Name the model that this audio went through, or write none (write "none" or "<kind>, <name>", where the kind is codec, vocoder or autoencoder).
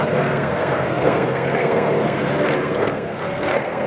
codec, SNAC